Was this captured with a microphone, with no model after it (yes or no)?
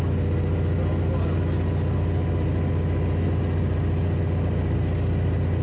yes